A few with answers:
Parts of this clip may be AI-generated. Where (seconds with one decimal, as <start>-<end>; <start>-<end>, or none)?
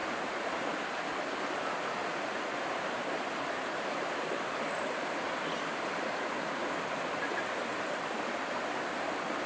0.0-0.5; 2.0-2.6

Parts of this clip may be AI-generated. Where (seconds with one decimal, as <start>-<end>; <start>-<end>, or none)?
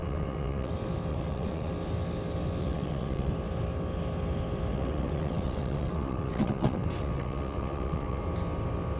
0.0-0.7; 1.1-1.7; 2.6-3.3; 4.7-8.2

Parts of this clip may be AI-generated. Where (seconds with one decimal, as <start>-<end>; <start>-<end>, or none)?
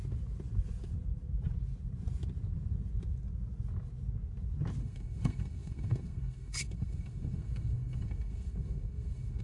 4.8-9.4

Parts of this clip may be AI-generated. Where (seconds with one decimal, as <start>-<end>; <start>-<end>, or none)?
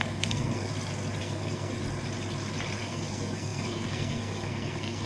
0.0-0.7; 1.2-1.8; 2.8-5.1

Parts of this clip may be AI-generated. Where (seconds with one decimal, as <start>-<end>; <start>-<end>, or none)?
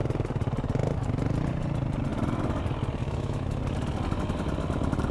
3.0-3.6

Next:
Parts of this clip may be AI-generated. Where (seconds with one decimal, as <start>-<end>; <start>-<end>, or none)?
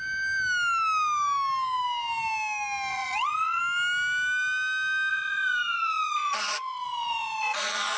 2.9-3.6; 5.1-8.0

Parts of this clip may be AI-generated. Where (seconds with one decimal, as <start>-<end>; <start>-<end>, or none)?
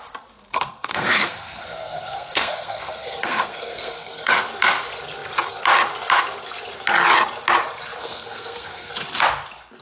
0.5-4.3; 8.0-8.9